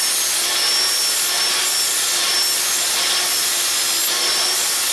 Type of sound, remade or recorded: recorded